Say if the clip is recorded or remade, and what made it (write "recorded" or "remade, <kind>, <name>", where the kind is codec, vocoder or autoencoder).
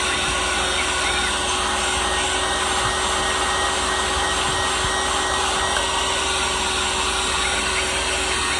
recorded